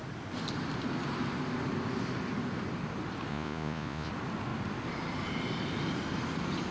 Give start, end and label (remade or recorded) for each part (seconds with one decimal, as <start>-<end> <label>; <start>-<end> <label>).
0.0-3.3 recorded; 3.3-4.1 remade; 4.1-6.7 recorded